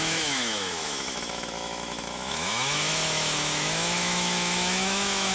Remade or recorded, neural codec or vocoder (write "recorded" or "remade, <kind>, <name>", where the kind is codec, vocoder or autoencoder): remade, autoencoder, DAC-VAE